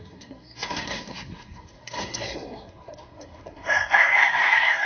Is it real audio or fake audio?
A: fake